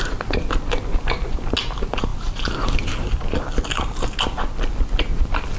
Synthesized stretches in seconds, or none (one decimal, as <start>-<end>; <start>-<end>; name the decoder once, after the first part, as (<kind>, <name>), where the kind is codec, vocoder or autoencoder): none